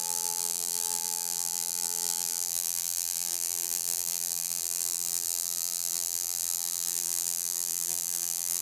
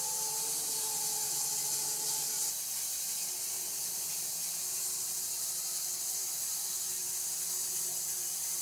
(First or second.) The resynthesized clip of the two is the first